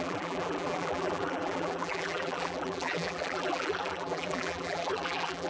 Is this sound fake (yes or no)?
yes